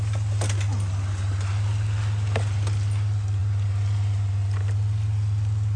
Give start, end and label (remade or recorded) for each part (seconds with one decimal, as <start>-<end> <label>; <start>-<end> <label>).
0.0-5.8 recorded